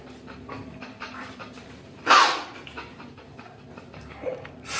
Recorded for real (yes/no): no